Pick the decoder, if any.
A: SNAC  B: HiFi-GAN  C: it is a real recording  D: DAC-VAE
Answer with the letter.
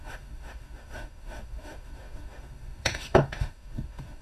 D